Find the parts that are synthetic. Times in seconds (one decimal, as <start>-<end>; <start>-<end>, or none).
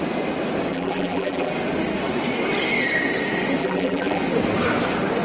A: 0.7-1.5; 3.6-4.2